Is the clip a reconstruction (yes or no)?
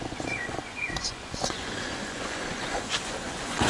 yes